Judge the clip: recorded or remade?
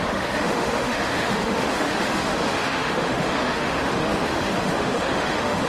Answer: remade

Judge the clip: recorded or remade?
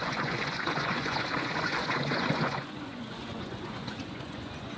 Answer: remade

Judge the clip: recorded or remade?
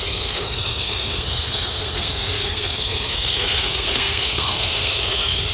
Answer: remade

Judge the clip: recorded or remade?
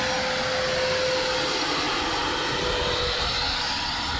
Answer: recorded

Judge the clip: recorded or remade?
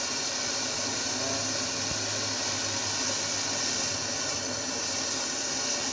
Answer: recorded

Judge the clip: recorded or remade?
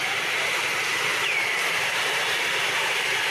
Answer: remade